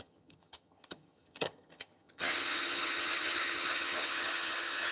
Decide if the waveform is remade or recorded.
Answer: remade